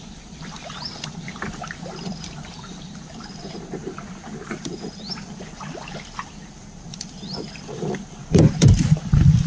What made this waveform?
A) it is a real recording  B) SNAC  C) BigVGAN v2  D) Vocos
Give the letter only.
C